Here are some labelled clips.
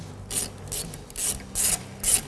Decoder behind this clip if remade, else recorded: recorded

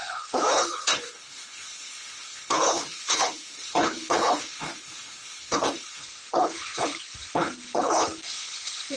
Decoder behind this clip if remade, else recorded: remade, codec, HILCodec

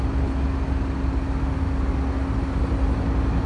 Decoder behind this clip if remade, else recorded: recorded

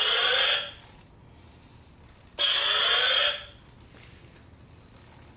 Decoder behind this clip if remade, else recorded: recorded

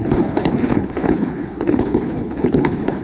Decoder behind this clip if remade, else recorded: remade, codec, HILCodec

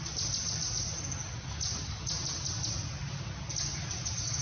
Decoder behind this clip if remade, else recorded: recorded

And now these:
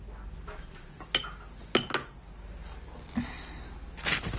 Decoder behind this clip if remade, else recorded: recorded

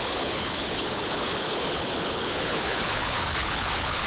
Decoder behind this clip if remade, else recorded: remade, codec, HILCodec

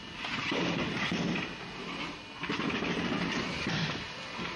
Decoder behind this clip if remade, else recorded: recorded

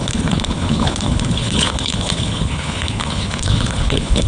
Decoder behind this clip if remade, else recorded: remade, codec, HILCodec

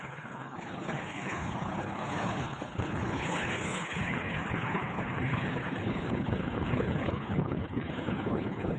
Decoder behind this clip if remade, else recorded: remade, codec, HILCodec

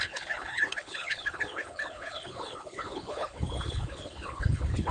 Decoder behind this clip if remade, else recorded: remade, codec, HILCodec